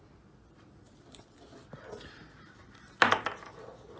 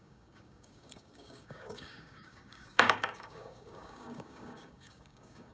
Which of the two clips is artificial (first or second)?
second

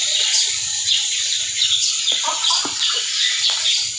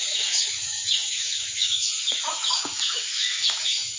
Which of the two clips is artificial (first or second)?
second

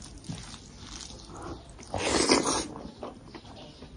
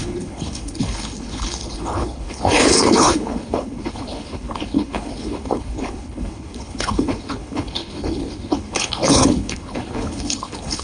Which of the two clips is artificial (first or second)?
second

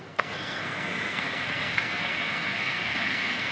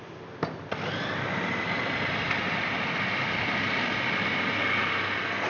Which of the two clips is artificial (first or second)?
first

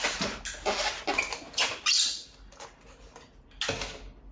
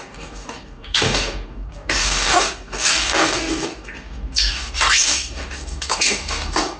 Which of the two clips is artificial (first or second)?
second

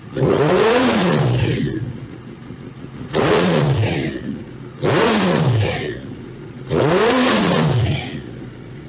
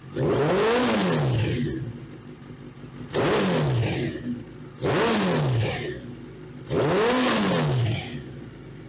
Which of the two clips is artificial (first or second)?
first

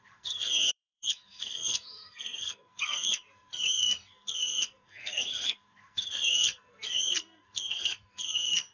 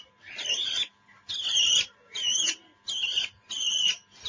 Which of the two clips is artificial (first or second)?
first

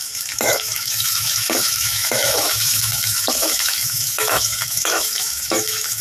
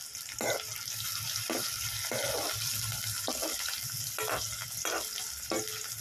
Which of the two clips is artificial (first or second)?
first